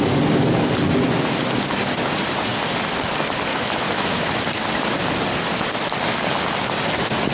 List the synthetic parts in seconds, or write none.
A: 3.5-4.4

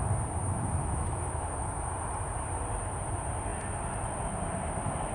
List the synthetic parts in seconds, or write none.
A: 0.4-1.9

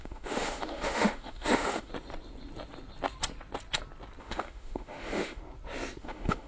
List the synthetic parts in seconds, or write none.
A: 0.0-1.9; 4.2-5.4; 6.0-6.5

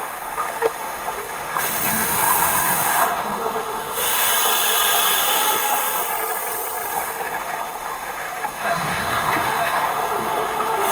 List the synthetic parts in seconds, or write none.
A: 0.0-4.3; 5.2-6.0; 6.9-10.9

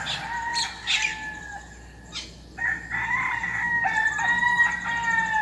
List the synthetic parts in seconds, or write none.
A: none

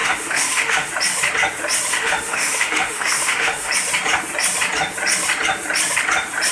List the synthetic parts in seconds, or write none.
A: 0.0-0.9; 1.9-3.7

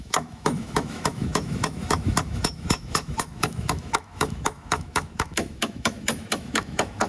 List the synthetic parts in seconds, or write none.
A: 0.0-7.1

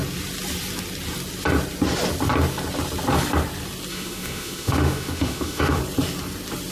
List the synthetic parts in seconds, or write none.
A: 3.9-5.8